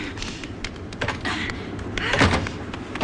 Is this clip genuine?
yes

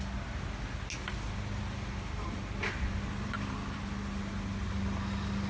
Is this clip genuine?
yes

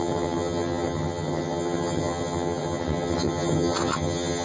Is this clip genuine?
no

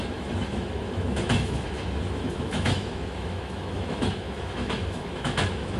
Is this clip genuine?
no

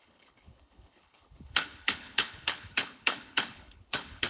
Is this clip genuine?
no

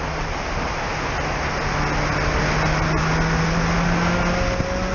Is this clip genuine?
yes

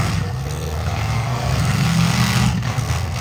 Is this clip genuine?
no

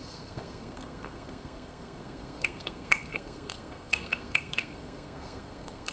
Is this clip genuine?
no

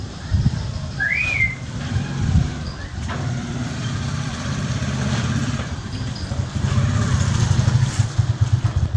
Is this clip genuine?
no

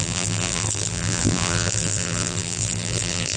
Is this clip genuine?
no